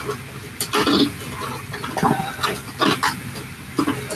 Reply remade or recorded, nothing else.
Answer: recorded